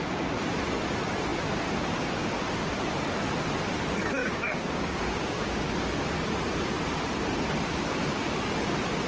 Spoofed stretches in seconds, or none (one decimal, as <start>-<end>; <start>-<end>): 4.2-5.7